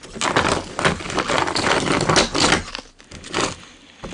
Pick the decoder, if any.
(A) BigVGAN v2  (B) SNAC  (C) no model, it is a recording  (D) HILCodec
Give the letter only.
C